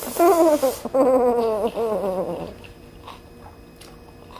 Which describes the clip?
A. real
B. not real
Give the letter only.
A